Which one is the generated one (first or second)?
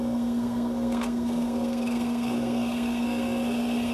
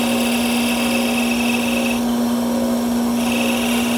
first